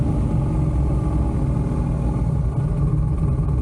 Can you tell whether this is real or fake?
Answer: real